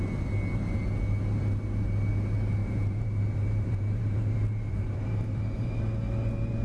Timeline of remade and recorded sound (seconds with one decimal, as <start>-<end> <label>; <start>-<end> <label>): 0.0-2.6 recorded; 2.6-5.8 remade; 5.8-6.6 recorded